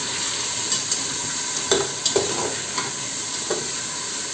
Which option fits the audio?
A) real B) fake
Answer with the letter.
A